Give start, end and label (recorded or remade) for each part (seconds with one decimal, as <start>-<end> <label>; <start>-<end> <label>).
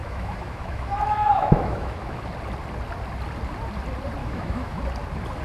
0.0-2.2 remade; 2.2-4.2 recorded; 4.2-4.8 remade; 4.8-5.4 recorded